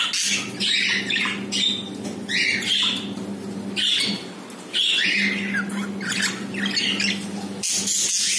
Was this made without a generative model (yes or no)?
yes